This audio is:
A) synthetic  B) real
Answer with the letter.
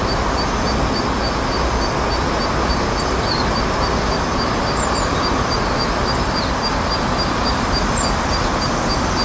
B